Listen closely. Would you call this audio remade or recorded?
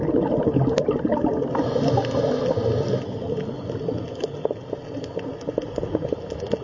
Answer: recorded